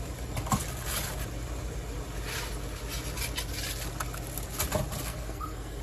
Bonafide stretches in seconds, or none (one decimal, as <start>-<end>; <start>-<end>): 0.0-5.1